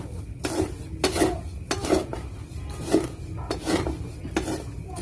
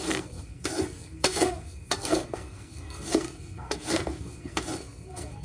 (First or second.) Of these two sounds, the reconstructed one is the second